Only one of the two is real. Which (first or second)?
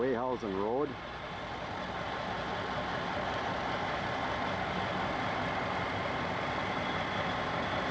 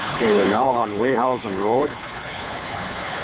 first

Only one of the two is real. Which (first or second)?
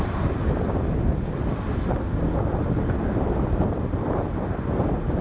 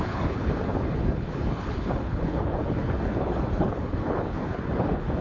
first